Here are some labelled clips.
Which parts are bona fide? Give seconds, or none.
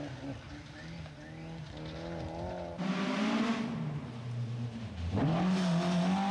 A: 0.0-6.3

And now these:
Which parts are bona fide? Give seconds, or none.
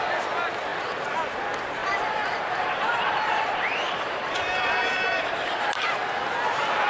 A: 0.0-1.8; 5.9-6.9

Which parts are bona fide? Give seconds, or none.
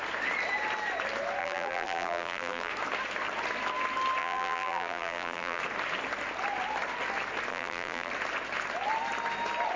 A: 0.0-1.4; 2.7-4.2; 5.6-7.5; 8.1-9.8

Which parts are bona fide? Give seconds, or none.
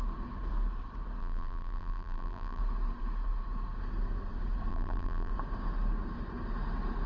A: 0.0-1.2; 2.6-4.7; 5.3-7.1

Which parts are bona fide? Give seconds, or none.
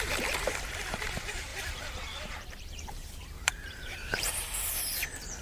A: 0.0-1.5; 4.7-5.4